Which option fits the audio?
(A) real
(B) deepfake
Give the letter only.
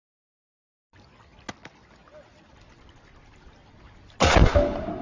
A